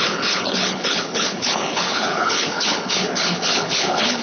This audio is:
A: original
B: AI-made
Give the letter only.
B